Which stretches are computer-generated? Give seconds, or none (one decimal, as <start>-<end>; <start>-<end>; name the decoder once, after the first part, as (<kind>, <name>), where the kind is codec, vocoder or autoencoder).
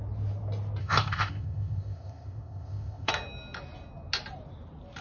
0.8-3.1 (codec, ZipCodec)